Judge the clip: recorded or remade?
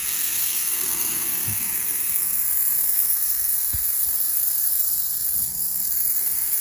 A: remade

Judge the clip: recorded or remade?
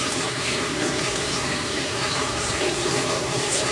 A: remade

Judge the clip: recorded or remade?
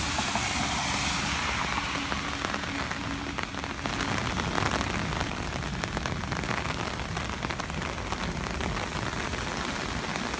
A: recorded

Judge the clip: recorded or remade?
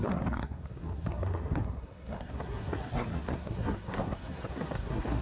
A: remade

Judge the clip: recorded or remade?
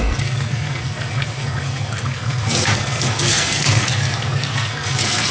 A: remade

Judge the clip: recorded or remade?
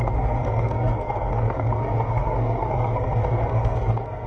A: remade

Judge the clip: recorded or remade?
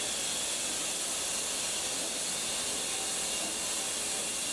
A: recorded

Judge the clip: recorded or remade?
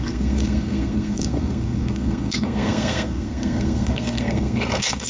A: remade